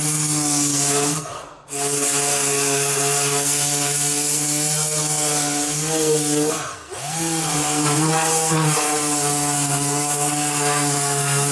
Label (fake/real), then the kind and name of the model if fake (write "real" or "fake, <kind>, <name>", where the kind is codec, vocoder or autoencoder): fake, codec, SNAC